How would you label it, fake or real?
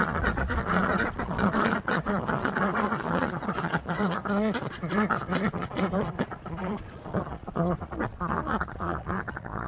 fake